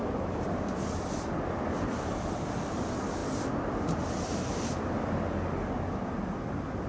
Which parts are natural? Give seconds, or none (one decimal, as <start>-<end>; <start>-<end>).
0.0-6.9